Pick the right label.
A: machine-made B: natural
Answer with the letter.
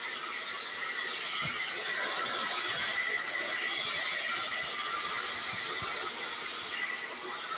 B